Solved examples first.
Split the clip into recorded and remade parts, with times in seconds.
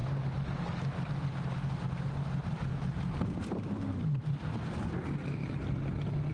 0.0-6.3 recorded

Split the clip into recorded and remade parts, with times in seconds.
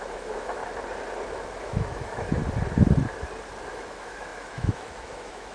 0.0-0.6 remade; 0.6-1.6 recorded; 1.6-2.4 remade; 2.4-3.7 recorded; 3.7-5.5 remade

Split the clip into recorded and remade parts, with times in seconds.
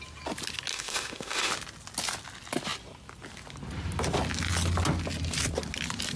0.0-0.7 recorded; 0.7-1.5 remade; 1.5-6.2 recorded